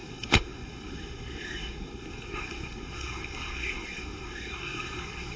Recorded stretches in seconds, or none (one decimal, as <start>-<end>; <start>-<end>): none